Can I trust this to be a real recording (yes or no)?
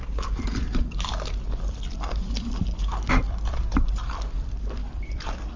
no